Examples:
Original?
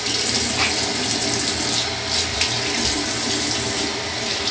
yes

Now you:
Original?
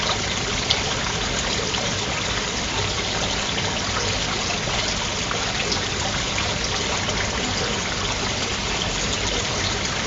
yes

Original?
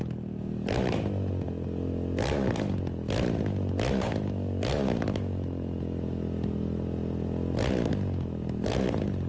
yes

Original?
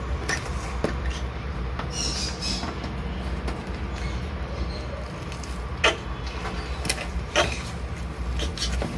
yes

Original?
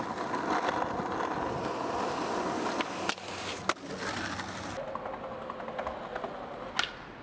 yes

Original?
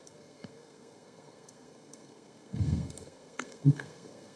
no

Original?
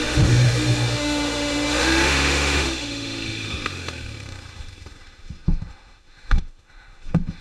no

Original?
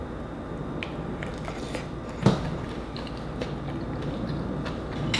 yes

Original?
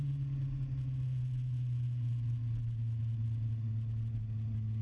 yes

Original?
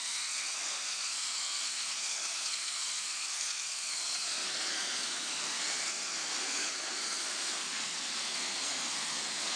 no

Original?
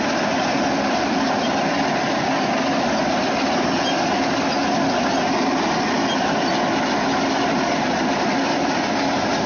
yes